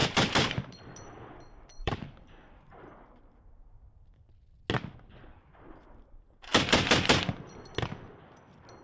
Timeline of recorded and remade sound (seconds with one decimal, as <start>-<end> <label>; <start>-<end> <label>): 0.0-2.9 remade; 2.9-8.8 recorded